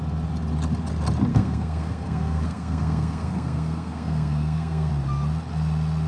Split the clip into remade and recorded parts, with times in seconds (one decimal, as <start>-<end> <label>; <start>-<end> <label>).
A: 0.0-1.3 recorded; 1.3-4.9 remade; 4.9-6.1 recorded

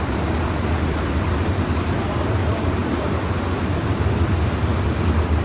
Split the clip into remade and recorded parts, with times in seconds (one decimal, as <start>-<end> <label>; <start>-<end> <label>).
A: 0.0-2.8 remade; 2.8-3.5 recorded; 3.5-5.4 remade

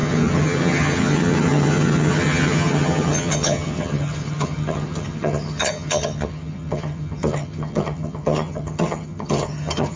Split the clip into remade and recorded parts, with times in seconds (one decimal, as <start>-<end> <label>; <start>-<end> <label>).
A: 0.0-10.0 remade

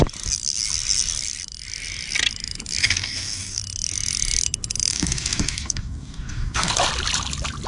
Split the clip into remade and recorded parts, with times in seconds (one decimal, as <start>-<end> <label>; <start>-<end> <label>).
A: 0.0-2.8 recorded; 2.8-3.6 remade; 3.6-4.9 recorded; 4.9-6.7 remade; 6.7-7.7 recorded

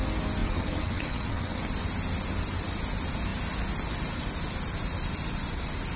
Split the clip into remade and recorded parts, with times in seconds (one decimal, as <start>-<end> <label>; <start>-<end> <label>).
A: 0.0-0.4 recorded; 0.4-1.6 remade; 1.6-6.0 recorded